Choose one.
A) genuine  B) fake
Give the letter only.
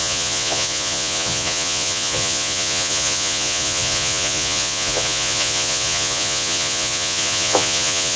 B